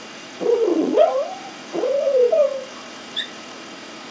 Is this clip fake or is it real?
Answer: fake